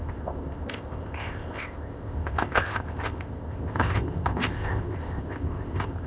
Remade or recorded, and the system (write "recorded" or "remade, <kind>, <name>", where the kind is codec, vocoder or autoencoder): remade, codec, ZipCodec